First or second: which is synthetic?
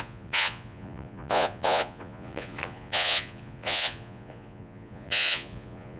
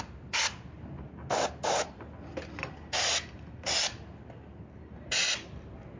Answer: first